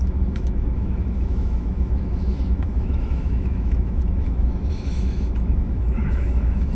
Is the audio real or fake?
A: fake